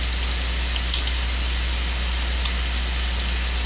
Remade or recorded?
recorded